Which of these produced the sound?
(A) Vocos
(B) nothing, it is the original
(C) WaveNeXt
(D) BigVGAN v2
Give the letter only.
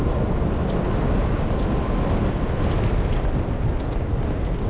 B